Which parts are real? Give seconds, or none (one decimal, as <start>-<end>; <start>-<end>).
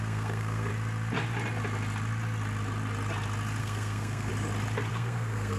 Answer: 0.7-3.6; 4.3-4.9